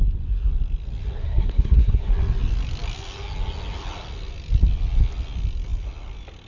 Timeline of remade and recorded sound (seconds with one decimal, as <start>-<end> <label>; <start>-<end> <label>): 0.0-1.2 recorded; 1.2-2.1 remade; 2.1-6.5 recorded